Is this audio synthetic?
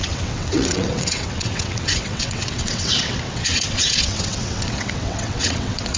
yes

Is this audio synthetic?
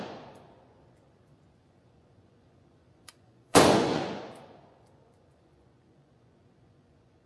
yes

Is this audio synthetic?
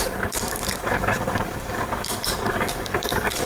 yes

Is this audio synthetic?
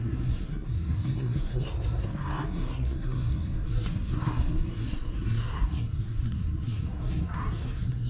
yes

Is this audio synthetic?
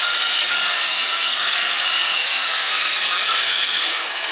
yes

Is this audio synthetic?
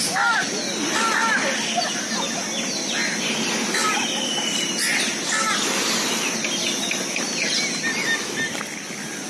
no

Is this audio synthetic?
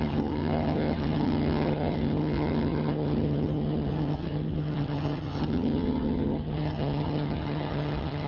yes